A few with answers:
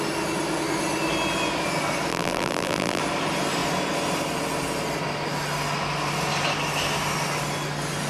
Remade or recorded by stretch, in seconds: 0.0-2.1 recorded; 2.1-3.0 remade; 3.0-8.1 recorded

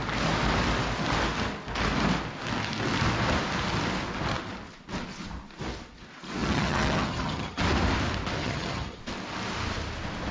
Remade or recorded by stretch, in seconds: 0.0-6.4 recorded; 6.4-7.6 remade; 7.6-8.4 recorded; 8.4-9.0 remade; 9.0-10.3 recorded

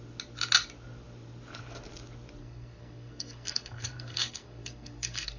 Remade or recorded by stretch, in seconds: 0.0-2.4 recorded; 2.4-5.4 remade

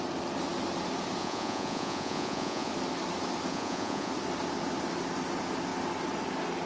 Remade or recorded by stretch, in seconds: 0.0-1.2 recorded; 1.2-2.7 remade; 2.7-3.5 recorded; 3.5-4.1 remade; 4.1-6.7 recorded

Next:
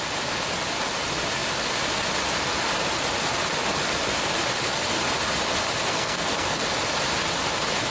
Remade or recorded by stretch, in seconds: 0.0-5.9 recorded; 5.9-6.6 remade; 6.6-7.9 recorded

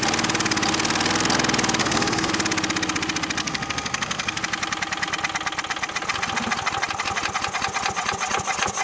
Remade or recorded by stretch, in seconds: 0.0-1.8 recorded; 1.8-2.3 remade; 2.3-3.4 recorded; 3.4-4.4 remade; 4.4-8.8 recorded

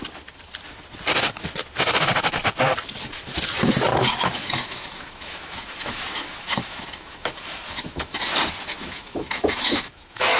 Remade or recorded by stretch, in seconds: 0.0-3.9 recorded; 3.9-8.2 remade; 8.2-8.8 recorded; 8.8-10.4 remade